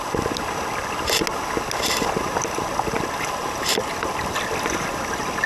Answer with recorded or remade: recorded